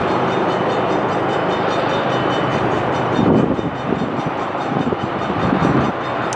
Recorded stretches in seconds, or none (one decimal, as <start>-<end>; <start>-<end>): 0.0-2.5; 5.9-6.4